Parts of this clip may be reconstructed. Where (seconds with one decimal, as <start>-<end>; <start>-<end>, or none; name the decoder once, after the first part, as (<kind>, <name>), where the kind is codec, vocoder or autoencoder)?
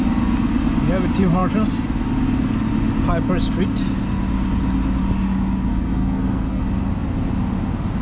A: 5.7-6.6 (codec, SNAC)